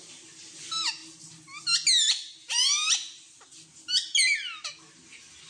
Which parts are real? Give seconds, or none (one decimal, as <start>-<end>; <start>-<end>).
0.0-5.5